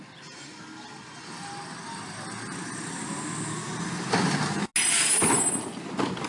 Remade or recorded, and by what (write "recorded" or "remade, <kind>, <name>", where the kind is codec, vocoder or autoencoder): recorded